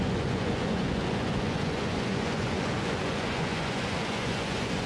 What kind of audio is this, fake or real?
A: fake